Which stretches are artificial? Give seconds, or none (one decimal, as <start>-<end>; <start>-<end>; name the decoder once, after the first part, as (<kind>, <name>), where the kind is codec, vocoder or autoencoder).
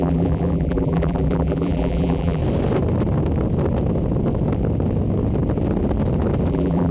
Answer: 0.0-2.4 (vocoder, BigVGAN v2); 6.5-6.9